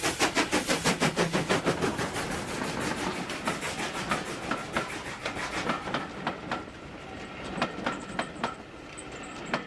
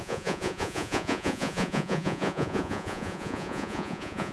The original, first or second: first